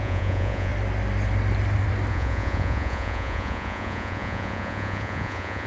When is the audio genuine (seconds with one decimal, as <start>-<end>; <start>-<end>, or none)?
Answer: 0.7-2.1